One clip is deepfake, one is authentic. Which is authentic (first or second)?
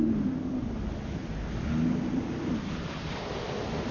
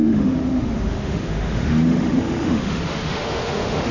first